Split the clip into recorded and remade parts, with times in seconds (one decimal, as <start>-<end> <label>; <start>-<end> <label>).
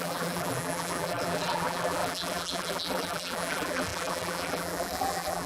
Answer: 0.0-5.5 remade